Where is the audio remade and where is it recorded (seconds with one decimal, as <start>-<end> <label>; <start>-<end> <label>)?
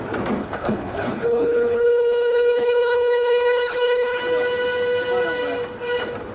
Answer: 0.0-0.4 recorded; 0.4-4.2 remade; 4.2-6.3 recorded